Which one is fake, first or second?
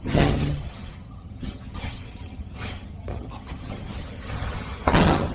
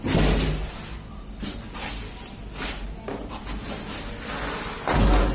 first